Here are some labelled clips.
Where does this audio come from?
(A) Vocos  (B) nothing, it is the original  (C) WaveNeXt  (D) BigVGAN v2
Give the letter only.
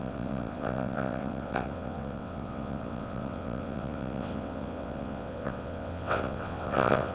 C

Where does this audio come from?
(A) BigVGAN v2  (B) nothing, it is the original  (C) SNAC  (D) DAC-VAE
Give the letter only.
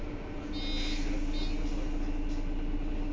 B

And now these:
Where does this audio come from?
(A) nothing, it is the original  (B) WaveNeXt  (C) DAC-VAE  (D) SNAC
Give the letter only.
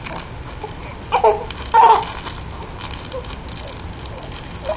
A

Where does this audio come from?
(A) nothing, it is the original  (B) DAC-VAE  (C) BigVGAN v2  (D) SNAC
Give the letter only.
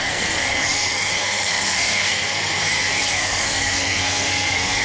D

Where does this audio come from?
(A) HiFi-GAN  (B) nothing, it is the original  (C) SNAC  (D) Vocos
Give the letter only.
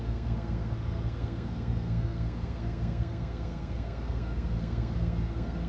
C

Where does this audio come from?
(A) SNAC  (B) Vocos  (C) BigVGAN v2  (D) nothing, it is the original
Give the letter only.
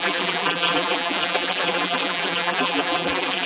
C